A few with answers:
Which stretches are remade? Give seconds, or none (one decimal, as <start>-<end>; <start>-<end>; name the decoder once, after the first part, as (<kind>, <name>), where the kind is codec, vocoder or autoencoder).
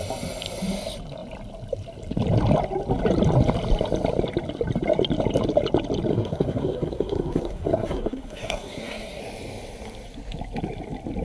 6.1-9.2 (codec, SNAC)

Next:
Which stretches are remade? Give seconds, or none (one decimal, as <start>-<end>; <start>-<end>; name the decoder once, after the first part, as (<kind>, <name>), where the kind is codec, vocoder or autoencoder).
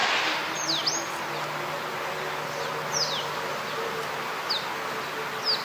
none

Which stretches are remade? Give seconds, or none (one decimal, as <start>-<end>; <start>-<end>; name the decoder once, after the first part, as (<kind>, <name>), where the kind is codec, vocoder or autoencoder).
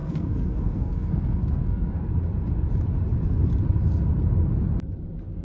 0.0-2.1 (codec, SNAC)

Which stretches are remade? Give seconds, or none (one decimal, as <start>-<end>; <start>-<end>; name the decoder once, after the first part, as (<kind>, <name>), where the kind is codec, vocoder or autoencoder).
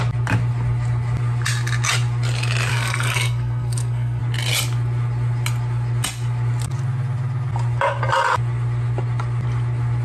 2.7-4.2 (codec, SNAC)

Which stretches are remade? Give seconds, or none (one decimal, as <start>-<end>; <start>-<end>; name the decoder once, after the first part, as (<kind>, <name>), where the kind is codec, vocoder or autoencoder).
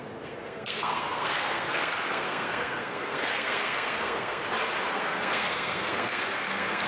0.0-4.4 (codec, SNAC); 4.9-6.9